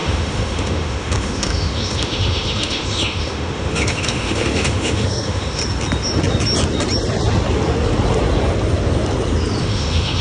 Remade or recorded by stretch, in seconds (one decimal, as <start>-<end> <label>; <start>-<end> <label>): 0.0-5.6 remade; 5.6-9.6 recorded; 9.6-10.2 remade